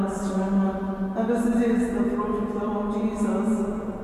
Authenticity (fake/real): real